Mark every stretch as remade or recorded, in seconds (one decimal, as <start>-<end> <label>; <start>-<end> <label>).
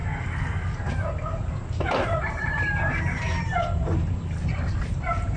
0.0-5.4 recorded